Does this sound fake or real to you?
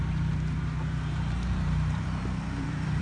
fake